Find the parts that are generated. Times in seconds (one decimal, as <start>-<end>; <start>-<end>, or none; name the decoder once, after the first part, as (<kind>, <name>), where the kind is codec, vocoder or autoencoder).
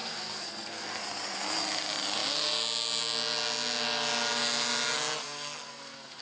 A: 0.0-1.0 (codec, SNAC); 5.2-6.2